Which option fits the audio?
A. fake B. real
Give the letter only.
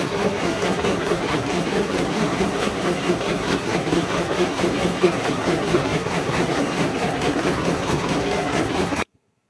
A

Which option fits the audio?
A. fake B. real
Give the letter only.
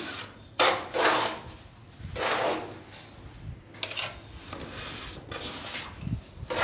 B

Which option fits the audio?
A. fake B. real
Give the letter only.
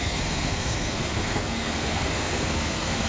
A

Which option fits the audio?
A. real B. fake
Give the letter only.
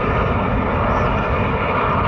A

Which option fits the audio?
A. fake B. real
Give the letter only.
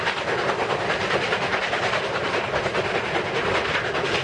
B